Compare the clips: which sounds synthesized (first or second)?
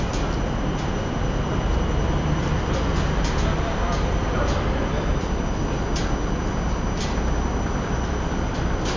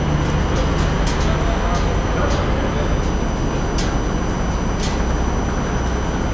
first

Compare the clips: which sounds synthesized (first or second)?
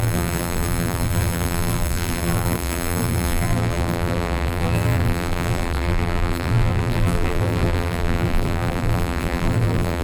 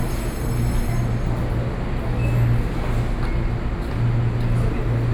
first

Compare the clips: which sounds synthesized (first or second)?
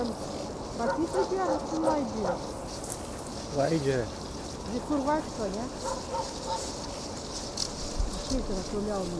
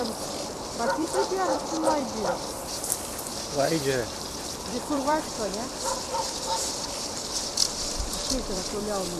second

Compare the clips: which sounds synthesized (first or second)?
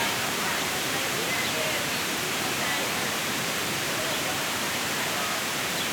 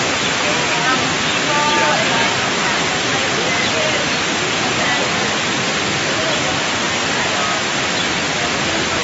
first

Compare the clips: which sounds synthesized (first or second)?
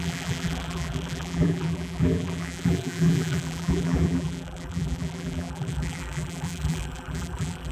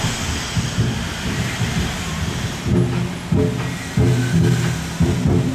first